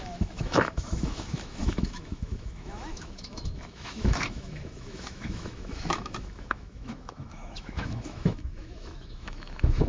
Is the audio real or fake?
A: fake